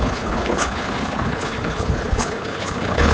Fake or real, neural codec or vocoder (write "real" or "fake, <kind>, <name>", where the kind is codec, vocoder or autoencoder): fake, codec, HILCodec